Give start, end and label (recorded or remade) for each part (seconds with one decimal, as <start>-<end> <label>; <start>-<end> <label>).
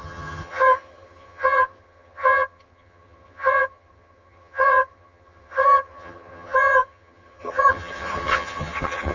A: 0.0-9.1 remade